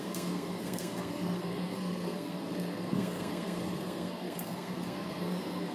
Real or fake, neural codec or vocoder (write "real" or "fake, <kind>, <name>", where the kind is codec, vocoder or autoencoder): fake, codec, SNAC